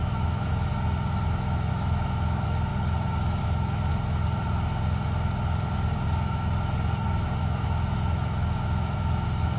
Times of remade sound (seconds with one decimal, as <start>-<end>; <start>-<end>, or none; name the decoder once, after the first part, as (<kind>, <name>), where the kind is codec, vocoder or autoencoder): 0.0-0.7 (autoencoder, DAC-VAE); 1.7-2.7; 3.4-3.9; 7.4-9.6